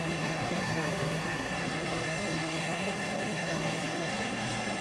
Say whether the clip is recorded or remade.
remade